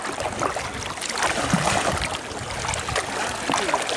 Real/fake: real